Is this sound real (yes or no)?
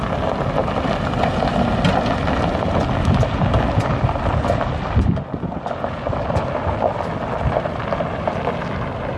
yes